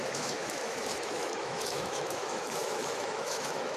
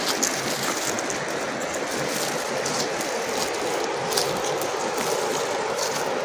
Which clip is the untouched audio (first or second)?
second